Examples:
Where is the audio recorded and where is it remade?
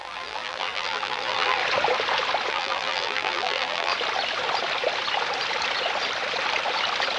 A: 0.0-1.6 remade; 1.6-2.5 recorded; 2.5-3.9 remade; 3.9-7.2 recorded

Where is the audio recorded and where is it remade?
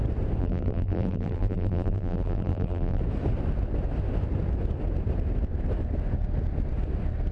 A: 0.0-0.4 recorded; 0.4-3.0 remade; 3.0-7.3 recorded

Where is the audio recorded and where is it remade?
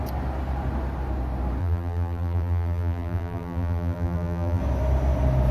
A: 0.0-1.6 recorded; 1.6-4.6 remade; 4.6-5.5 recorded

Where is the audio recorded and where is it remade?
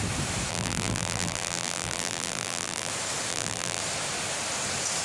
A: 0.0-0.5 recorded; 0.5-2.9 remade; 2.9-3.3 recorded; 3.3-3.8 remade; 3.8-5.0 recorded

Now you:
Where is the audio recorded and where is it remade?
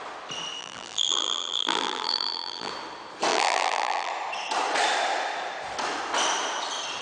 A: 0.0-0.6 recorded; 0.6-2.7 remade; 2.7-3.3 recorded; 3.3-4.1 remade; 4.1-7.0 recorded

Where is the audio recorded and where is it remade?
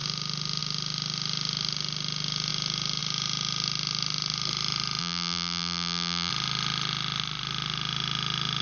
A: 0.0-5.0 recorded; 5.0-6.3 remade; 6.3-8.6 recorded